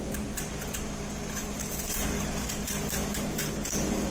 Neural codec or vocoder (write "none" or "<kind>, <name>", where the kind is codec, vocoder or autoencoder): vocoder, BigVGAN v2